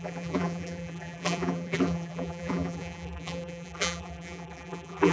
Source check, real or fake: fake